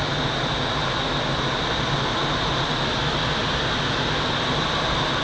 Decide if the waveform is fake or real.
real